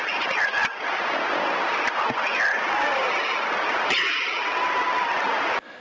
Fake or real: real